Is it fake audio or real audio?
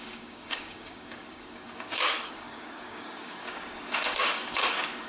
fake